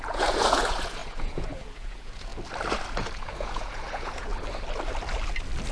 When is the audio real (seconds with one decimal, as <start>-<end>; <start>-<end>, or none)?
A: 2.3-3.2; 4.3-5.7